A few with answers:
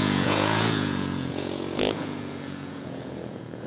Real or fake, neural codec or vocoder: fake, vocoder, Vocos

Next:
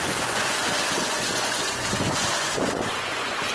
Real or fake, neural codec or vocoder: fake, vocoder, Vocos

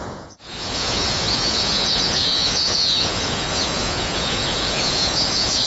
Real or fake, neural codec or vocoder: fake, vocoder, Vocos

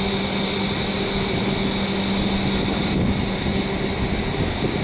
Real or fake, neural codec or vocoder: real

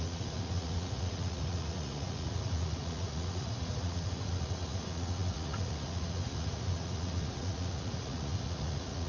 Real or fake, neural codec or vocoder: fake, vocoder, Vocos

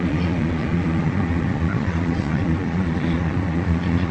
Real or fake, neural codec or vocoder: fake, vocoder, Vocos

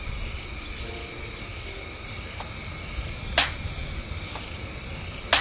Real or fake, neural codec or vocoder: real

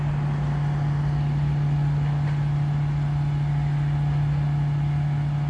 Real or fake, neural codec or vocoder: real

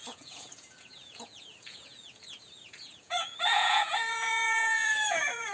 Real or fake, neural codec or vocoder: fake, vocoder, Vocos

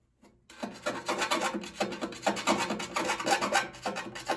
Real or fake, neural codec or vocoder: real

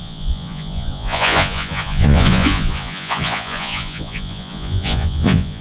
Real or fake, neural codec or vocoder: fake, vocoder, Vocos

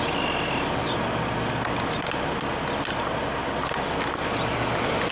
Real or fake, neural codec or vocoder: real